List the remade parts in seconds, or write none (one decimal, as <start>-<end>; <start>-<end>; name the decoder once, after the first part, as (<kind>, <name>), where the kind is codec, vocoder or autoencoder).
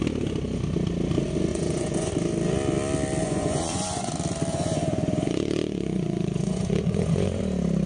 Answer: 1.5-2.1 (vocoder, Vocos); 3.2-4.1; 4.5-7.4